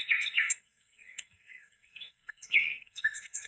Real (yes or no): no